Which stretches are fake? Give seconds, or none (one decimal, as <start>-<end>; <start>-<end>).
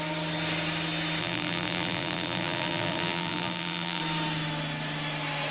1.2-4.0